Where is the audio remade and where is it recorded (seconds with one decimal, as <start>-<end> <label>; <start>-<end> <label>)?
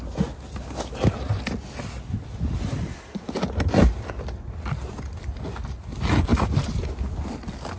0.0-7.8 recorded